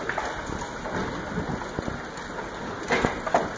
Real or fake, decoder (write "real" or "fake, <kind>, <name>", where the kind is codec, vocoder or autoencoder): real